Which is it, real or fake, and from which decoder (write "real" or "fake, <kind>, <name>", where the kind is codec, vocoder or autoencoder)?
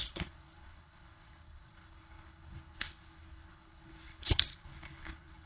fake, codec, HILCodec